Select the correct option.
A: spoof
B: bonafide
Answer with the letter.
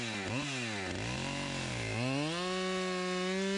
B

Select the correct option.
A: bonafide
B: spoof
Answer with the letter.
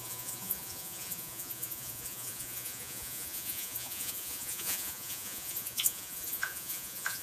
B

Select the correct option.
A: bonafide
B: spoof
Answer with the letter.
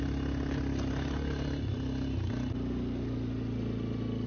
A